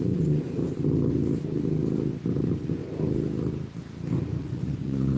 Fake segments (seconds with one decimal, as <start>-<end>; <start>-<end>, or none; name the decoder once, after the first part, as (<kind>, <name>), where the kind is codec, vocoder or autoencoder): 0.0-0.6 (vocoder, Vocos); 2.4-2.8; 4.4-5.2